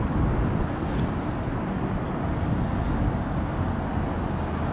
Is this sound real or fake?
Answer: real